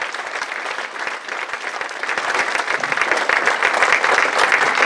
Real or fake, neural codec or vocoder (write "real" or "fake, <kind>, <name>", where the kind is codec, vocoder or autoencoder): real